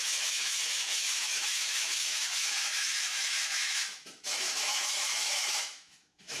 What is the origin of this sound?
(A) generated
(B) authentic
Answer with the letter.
A